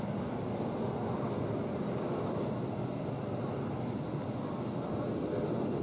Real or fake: real